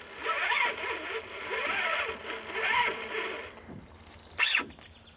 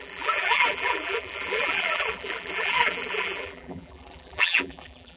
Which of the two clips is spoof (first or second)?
second